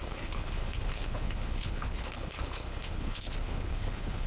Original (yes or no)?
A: no